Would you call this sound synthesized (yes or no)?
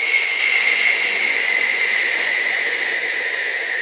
yes